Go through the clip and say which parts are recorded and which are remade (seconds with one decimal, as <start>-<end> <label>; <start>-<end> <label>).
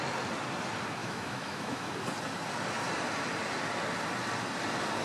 0.0-1.0 recorded; 1.0-1.9 remade; 1.9-5.0 recorded